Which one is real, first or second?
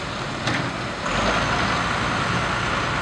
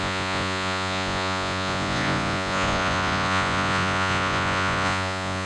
first